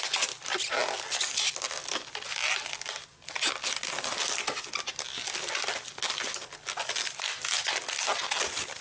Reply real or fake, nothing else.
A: real